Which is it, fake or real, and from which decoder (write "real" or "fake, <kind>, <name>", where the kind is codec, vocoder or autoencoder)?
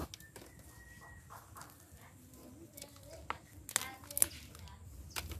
real